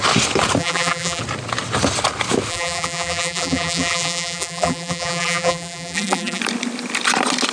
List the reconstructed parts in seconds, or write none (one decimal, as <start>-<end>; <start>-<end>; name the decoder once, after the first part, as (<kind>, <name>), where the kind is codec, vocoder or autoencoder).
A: 0.6-1.2 (vocoder, BigVGAN v2); 2.5-6.4